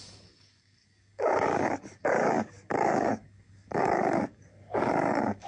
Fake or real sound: fake